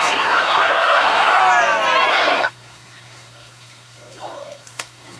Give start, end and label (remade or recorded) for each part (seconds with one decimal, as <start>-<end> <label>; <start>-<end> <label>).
0.0-1.4 remade; 1.4-2.1 recorded; 2.1-5.2 remade